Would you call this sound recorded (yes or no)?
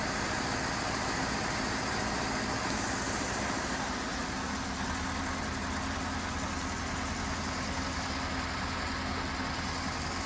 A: yes